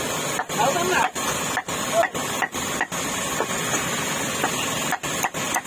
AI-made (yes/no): no